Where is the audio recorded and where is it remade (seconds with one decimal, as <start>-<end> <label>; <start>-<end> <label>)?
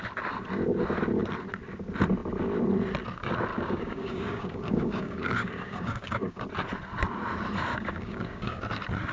0.0-3.5 recorded; 3.5-6.4 remade; 6.4-7.7 recorded; 7.7-8.6 remade; 8.6-9.1 recorded